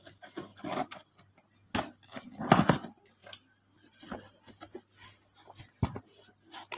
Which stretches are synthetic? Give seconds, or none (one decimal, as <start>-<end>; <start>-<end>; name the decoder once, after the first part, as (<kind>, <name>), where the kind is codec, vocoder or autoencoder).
none